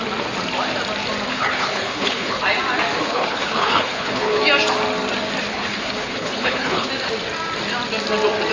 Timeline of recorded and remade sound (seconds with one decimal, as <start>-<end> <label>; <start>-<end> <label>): 0.0-1.3 recorded; 1.3-2.4 remade; 2.4-3.0 recorded; 3.0-4.4 remade; 4.4-5.5 recorded; 5.5-6.9 remade; 6.9-8.5 recorded